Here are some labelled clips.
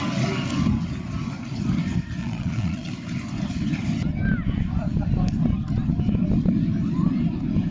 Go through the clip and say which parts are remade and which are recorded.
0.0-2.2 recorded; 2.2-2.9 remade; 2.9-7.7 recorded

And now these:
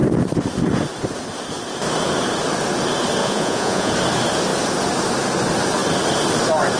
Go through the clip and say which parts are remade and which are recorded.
0.0-3.2 recorded; 3.2-3.9 remade; 3.9-6.8 recorded

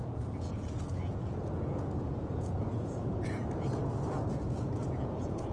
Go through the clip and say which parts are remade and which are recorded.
0.0-3.4 remade; 3.4-4.3 recorded; 4.3-5.5 remade

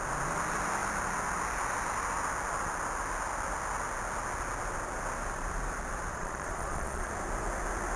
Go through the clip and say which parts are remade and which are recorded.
0.0-6.1 recorded; 6.1-7.1 remade; 7.1-8.0 recorded

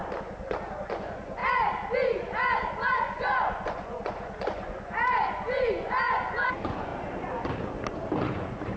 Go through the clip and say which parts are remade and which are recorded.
0.0-0.9 recorded; 0.9-1.4 remade; 1.4-2.9 recorded; 2.9-6.9 remade; 6.9-8.2 recorded; 8.2-8.8 remade